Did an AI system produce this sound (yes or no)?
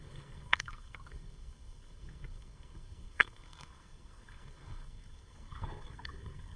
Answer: yes